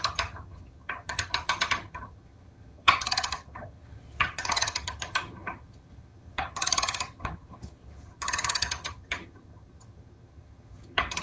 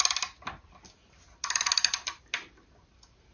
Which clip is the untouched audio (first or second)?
second